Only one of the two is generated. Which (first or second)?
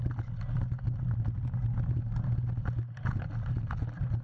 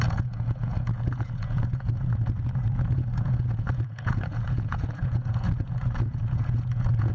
second